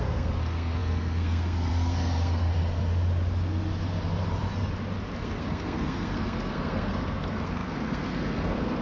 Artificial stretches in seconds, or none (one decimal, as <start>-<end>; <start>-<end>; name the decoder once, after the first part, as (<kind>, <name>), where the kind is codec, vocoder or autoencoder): 0.0-2.5 (codec, SNAC); 5.2-8.8